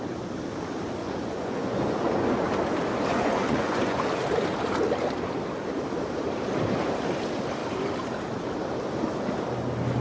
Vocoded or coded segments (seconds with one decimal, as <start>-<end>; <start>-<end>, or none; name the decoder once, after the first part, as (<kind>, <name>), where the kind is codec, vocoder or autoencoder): 1.0-2.3 (vocoder, Vocos); 3.1-4.2